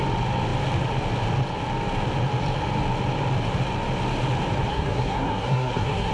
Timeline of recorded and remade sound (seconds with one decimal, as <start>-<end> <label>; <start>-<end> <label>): 0.0-4.7 recorded; 4.7-6.1 remade